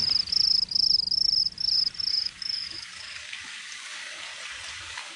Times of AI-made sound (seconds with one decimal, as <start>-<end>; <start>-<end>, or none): 2.1-4.3; 4.8-5.2